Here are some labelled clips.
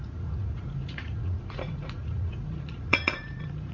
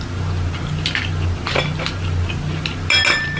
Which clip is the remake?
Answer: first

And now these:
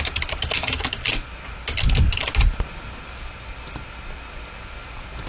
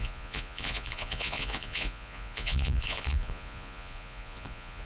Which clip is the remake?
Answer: second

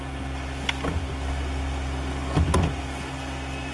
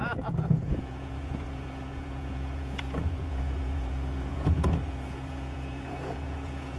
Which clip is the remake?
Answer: second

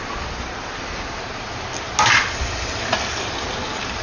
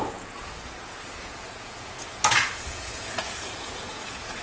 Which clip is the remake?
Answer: second